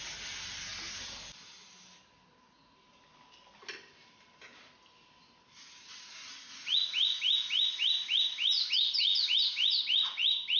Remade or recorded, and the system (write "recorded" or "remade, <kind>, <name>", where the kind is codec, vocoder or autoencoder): recorded